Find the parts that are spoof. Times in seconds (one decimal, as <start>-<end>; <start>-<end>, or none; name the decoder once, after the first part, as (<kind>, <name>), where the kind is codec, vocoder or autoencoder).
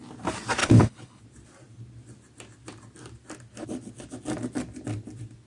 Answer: 0.6-1.2 (codec, HILCodec)